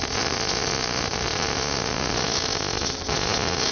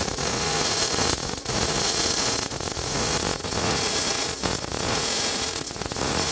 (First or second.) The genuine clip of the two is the first